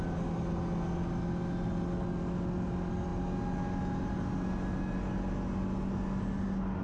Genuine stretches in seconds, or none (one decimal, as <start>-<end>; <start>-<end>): 0.0-6.8